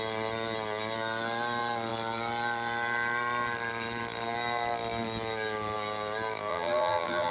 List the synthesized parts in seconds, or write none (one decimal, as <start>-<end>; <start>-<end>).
6.5-7.3